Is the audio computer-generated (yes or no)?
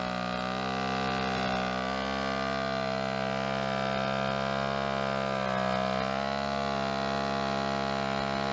no